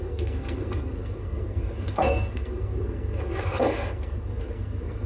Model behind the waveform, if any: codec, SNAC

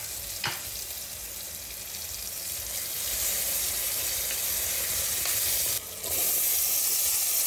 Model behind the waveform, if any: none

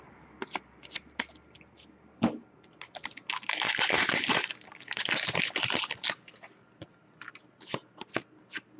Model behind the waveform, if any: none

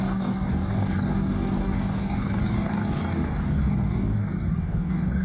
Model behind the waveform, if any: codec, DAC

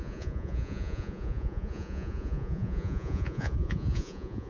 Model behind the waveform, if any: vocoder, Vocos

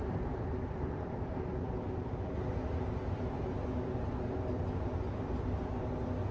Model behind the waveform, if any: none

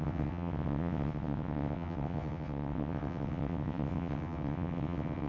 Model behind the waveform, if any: vocoder, WaveNeXt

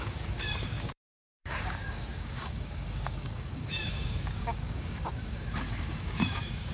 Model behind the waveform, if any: codec, DAC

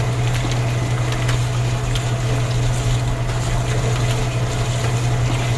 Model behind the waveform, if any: none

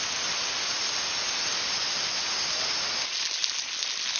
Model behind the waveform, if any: none